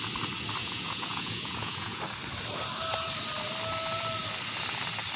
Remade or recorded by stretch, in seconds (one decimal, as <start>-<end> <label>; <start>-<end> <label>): 0.0-0.6 recorded; 0.6-2.0 remade; 2.0-5.2 recorded